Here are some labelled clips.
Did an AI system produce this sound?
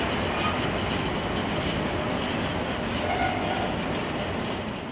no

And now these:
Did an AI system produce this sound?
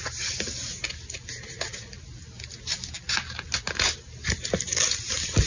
no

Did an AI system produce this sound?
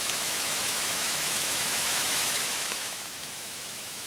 yes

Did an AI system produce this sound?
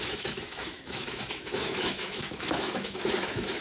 yes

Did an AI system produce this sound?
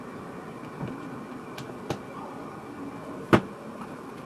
no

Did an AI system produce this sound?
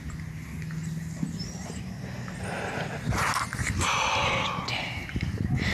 no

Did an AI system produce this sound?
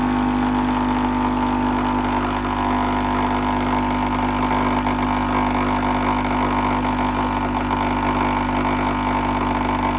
no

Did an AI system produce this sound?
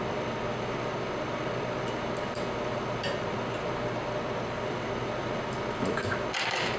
no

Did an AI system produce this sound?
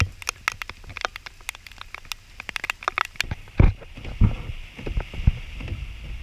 no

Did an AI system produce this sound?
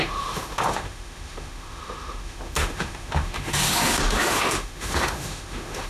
yes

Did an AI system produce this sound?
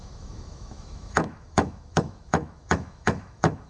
yes